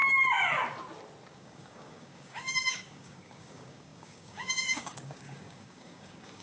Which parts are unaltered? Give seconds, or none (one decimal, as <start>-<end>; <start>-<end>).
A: 0.0-1.3